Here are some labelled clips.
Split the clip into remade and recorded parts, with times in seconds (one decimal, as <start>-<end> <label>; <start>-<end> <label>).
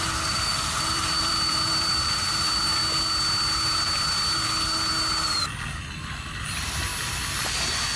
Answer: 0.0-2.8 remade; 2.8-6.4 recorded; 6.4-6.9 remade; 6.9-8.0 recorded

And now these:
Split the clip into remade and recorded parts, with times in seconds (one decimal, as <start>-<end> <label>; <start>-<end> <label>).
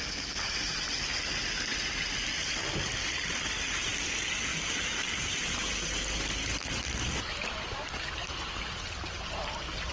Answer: 0.0-4.5 recorded; 4.5-6.6 remade; 6.6-8.2 recorded; 8.2-9.9 remade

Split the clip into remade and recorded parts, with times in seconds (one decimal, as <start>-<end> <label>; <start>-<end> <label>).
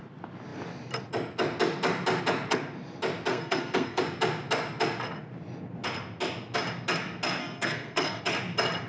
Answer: 0.0-3.3 recorded; 3.3-4.0 remade; 4.0-7.4 recorded; 7.4-8.2 remade; 8.2-8.9 recorded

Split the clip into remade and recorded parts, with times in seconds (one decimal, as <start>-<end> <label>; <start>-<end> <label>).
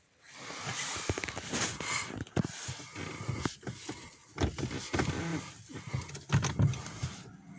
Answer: 0.0-7.6 recorded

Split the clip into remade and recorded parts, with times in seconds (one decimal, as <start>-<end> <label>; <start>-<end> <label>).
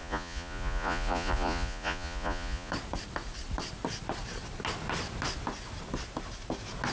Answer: 0.0-2.7 remade; 2.7-6.9 recorded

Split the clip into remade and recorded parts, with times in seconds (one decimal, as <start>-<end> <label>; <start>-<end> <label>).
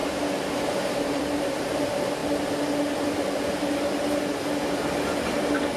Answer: 0.0-0.5 recorded; 0.5-2.2 remade; 2.2-5.8 recorded